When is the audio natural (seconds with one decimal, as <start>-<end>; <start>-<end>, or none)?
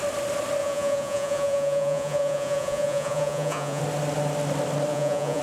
0.0-0.6; 3.8-4.9